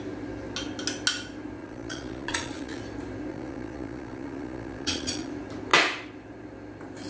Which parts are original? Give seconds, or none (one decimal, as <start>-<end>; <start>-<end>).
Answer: 0.0-1.6; 2.8-3.3; 5.3-7.1